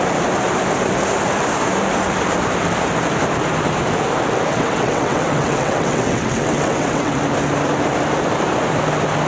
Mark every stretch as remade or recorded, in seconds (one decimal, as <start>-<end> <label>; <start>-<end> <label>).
0.0-4.5 recorded; 4.5-7.2 remade; 7.2-9.3 recorded